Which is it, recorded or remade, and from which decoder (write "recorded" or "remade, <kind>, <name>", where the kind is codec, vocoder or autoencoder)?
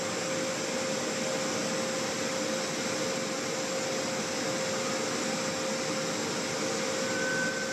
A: recorded